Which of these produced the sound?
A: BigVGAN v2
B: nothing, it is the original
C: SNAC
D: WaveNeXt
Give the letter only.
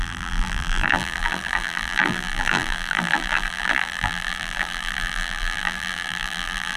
A